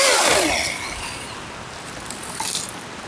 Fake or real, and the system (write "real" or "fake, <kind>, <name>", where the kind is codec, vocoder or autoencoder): real